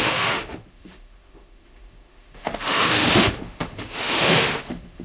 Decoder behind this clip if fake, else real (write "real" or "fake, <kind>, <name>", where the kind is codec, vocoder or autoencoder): fake, autoencoder, DAC-VAE